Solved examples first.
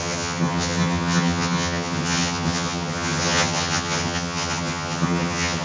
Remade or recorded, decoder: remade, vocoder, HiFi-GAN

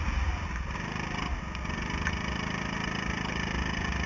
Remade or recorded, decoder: recorded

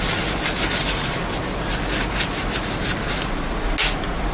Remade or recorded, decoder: recorded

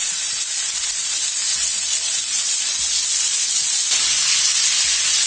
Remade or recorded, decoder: recorded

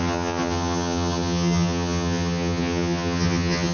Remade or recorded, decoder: remade, vocoder, HiFi-GAN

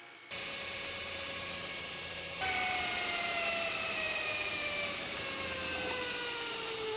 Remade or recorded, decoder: recorded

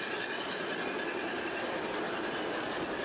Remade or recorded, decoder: recorded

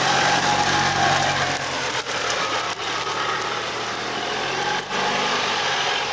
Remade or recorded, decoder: recorded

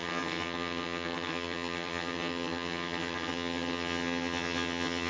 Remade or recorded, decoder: remade, vocoder, HiFi-GAN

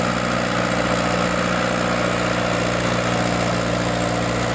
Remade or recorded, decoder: recorded